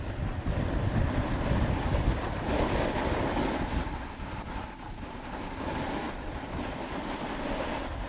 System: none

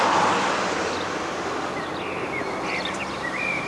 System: vocoder, BigVGAN v2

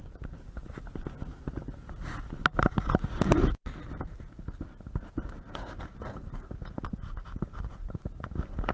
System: none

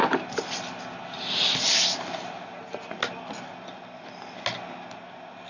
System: none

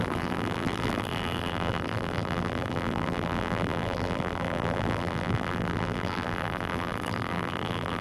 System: vocoder, BigVGAN v2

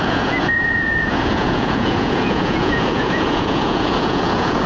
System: vocoder, Vocos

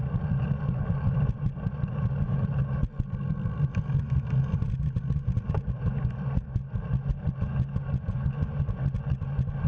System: none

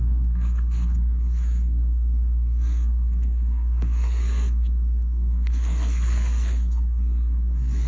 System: codec, SNAC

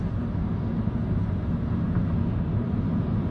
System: none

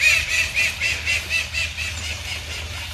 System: none